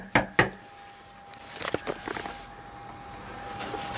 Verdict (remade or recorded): recorded